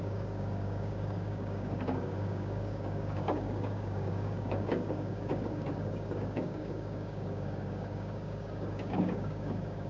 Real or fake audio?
fake